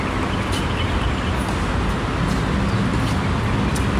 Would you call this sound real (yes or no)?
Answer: yes